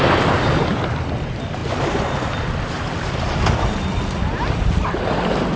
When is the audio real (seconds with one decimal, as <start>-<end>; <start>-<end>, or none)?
0.0-5.6